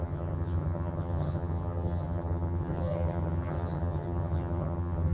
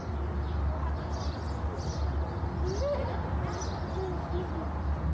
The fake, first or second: first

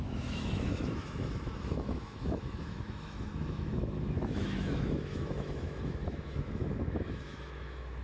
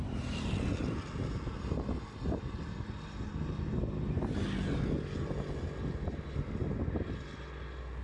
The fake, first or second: first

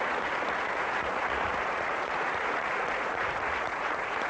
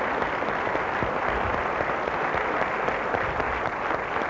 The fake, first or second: first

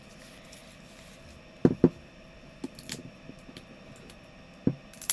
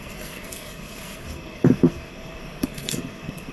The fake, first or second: second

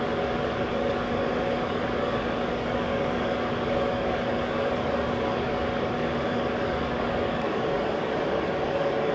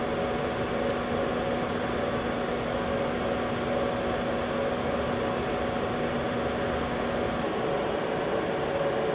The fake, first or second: first